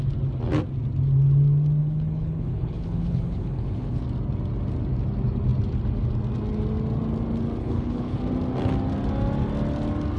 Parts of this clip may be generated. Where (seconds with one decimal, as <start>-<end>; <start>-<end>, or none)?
1.8-4.0; 7.6-8.2

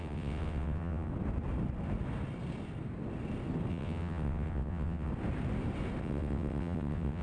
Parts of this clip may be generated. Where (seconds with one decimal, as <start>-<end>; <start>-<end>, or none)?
0.0-1.1; 3.7-5.1; 6.0-7.2

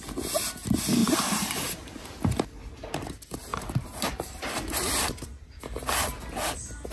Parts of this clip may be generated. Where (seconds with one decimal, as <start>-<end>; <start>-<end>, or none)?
1.0-2.4; 3.5-5.6

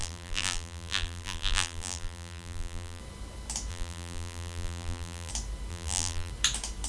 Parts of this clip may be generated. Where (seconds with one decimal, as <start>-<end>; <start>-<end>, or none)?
0.0-3.0; 3.7-5.3; 5.7-6.3